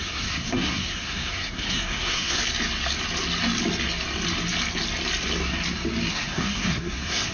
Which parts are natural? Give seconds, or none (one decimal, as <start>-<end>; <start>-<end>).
2.4-6.1